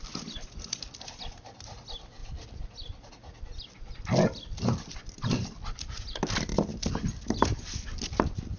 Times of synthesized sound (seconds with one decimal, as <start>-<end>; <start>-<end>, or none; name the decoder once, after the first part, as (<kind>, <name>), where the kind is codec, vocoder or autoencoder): 0.0-6.5 (vocoder, BigVGAN v2); 7.6-8.6

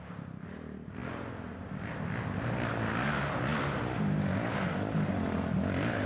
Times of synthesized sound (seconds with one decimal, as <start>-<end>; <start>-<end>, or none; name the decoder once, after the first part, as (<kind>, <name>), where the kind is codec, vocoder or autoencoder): none

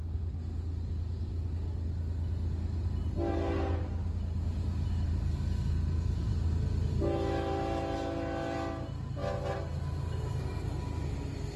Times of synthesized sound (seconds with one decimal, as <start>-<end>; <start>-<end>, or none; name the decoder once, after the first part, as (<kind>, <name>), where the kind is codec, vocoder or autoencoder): none

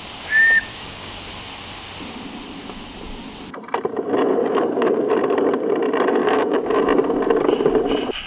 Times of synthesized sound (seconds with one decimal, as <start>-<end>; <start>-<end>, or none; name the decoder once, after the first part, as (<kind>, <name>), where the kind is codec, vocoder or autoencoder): 0.7-1.3 (codec, DAC); 4.4-5.1; 6.2-6.8

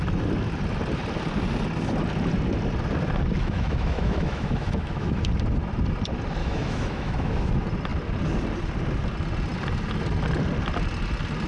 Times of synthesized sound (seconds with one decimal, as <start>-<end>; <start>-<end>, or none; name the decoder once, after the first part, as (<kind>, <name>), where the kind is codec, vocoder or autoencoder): 3.4-5.2 (autoencoder, DAC-VAE); 6.4-7.5

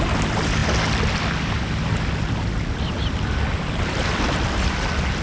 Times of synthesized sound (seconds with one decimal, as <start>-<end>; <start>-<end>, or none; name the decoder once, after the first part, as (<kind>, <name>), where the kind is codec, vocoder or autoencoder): none

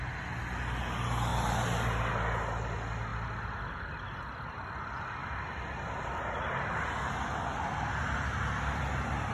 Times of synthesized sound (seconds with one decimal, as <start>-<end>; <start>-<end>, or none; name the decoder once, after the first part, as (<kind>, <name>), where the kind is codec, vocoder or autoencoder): 1.3-2.1 (vocoder, BigVGAN v2); 3.1-3.8

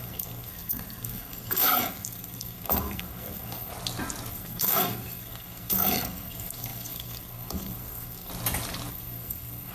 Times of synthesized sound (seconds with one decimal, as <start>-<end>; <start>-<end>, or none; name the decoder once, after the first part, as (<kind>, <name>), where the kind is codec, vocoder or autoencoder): 0.0-3.7 (codec, SNAC); 4.3-8.3; 8.9-9.7